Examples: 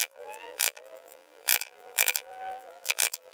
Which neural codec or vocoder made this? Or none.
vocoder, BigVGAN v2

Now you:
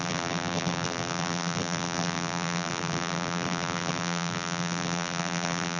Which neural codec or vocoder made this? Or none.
vocoder, BigVGAN v2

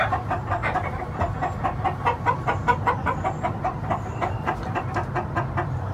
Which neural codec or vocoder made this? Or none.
vocoder, BigVGAN v2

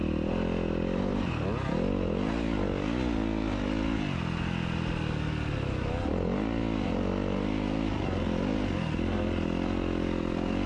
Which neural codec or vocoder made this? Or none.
none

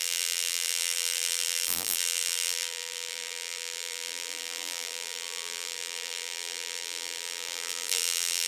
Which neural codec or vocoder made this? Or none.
vocoder, BigVGAN v2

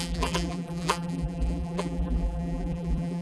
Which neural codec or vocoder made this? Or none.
vocoder, BigVGAN v2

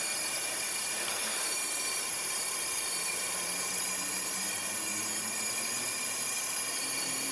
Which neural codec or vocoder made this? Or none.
vocoder, BigVGAN v2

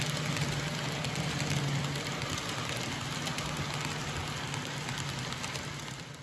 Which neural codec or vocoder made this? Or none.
none